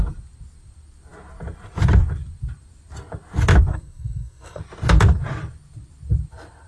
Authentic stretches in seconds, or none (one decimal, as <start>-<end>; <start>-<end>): 0.0-3.7; 4.6-6.7